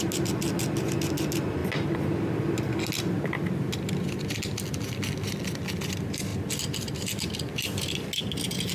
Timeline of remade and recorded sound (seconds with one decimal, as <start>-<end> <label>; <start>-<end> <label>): 0.0-8.7 recorded